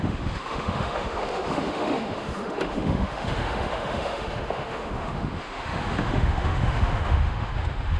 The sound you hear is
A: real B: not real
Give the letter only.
B